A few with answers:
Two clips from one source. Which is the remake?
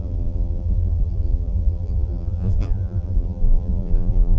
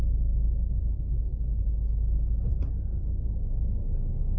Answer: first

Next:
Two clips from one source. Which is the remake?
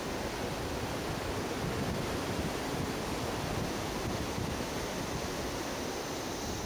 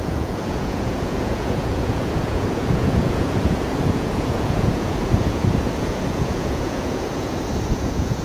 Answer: second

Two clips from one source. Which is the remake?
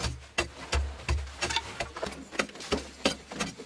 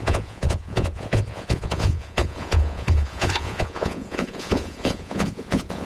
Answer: second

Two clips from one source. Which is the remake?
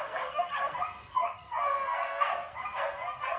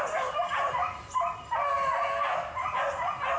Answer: first